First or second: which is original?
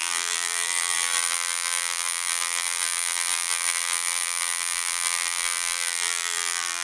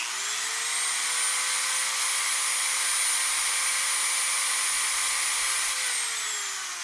second